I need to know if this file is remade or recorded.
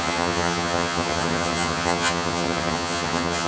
remade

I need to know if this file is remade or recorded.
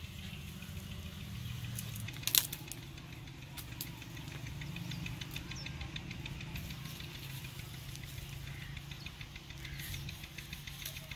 recorded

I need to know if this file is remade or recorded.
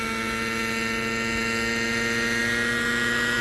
recorded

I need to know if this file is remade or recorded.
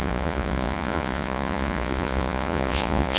remade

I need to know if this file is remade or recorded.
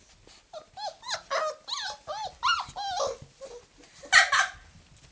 recorded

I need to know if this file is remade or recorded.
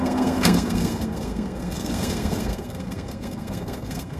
remade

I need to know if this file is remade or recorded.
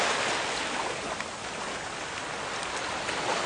recorded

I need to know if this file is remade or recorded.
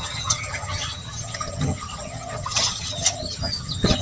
remade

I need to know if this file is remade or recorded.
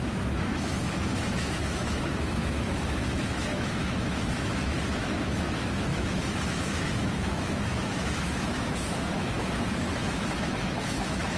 remade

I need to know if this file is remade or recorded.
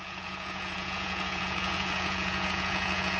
remade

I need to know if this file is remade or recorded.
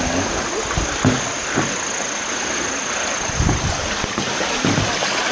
recorded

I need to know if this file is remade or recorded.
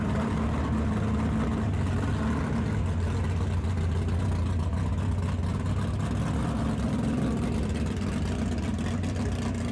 recorded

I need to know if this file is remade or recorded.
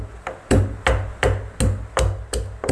recorded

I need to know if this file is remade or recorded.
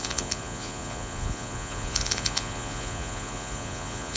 remade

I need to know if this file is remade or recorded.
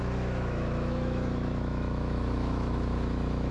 remade